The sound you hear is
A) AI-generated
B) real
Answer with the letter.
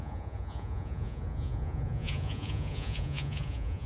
A